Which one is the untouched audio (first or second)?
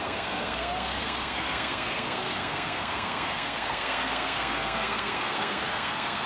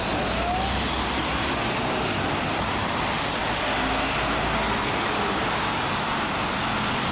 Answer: second